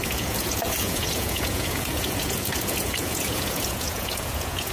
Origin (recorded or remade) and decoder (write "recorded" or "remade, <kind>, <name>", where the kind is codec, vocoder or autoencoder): remade, vocoder, Vocos